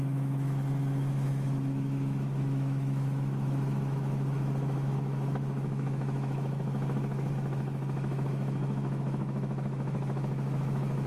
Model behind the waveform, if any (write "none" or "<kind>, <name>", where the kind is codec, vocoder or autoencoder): autoencoder, DAC-VAE